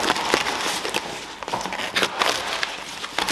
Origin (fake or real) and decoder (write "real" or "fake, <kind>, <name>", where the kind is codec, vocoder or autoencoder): real